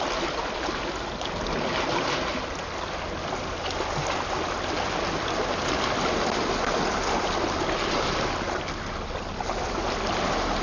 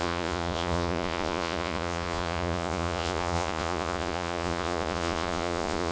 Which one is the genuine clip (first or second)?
first